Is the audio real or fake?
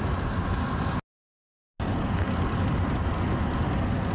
real